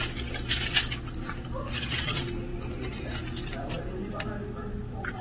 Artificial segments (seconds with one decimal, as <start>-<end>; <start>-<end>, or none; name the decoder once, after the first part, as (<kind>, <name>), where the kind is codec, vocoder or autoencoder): none